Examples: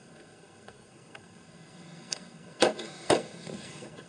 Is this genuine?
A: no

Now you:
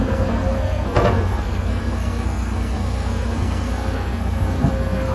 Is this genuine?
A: no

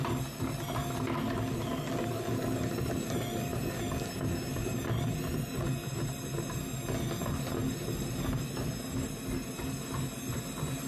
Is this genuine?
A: yes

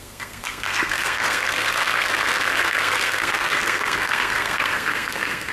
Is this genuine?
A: no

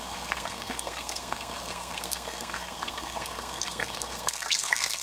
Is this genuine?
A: no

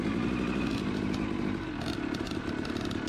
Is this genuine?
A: yes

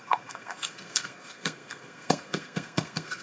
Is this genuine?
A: no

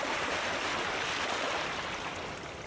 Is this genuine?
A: yes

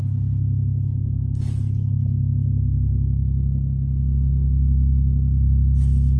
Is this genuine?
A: yes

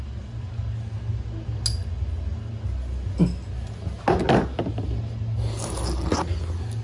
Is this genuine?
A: yes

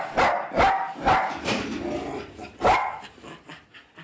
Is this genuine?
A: yes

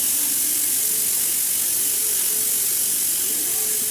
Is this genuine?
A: yes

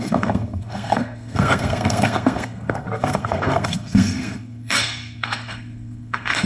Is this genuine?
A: no